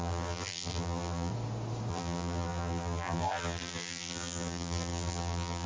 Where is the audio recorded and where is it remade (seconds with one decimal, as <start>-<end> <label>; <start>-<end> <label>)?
0.0-1.3 remade; 1.3-1.9 recorded; 1.9-5.7 remade